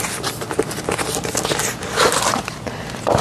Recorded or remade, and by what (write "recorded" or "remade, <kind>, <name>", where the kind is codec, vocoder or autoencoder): recorded